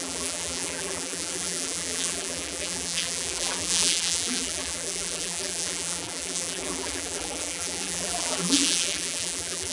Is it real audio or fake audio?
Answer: fake